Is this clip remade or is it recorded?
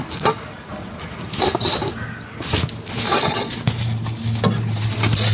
recorded